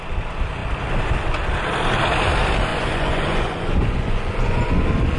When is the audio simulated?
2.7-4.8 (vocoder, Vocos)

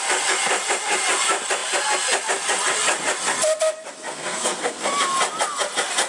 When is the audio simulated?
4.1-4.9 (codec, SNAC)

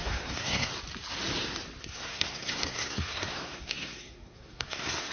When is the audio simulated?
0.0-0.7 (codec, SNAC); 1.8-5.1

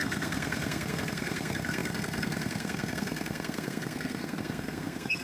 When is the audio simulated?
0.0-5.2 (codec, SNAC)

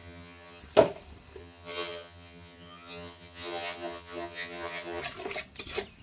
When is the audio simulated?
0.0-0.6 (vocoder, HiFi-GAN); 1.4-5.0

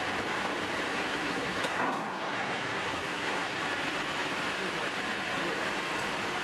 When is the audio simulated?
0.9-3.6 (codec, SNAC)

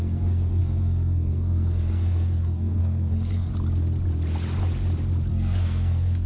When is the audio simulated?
0.0-3.5 (codec, SNAC); 5.3-6.3